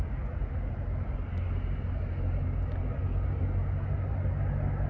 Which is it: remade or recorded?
recorded